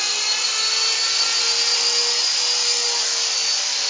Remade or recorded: recorded